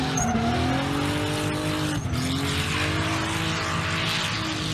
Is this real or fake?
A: real